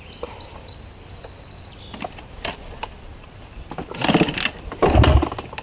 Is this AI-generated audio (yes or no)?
no